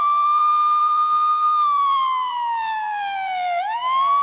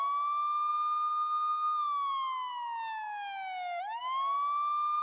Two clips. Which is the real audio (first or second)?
second